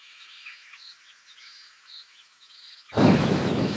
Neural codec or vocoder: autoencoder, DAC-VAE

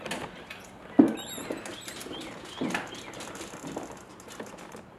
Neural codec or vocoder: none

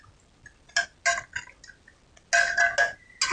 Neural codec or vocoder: none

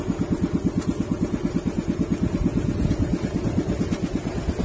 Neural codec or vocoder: none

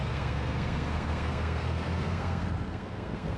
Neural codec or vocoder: codec, SNAC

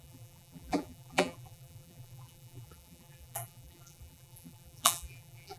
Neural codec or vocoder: vocoder, BigVGAN v2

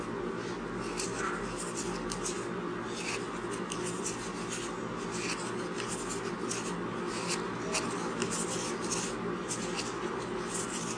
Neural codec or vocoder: none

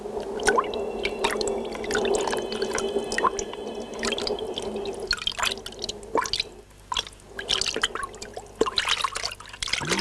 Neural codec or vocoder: none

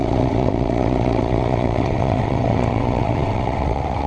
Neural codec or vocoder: vocoder, WaveNeXt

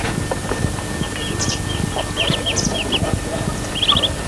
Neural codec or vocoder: none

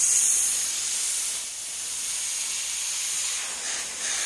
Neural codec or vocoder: none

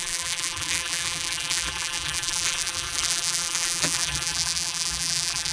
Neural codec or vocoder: vocoder, BigVGAN v2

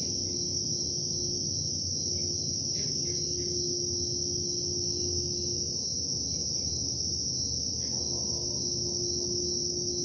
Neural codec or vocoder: none